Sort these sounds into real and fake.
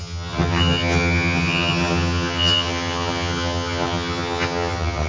fake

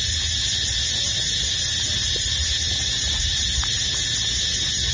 real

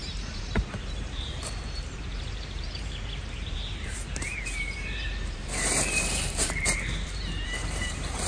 fake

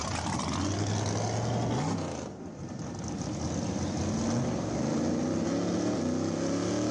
real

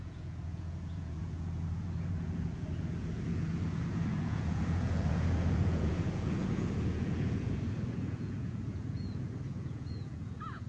fake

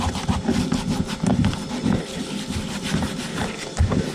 real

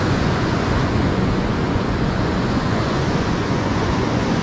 fake